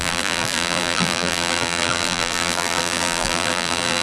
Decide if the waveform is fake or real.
fake